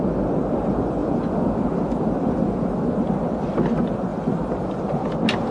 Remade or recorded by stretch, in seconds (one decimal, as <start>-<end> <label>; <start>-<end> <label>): 0.0-4.1 recorded; 4.1-4.8 remade; 4.8-5.5 recorded